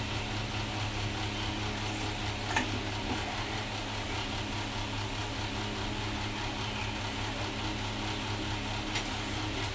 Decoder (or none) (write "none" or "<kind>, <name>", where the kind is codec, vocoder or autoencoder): none